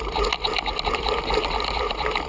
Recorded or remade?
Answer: recorded